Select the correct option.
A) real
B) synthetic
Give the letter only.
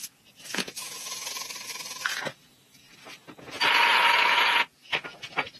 B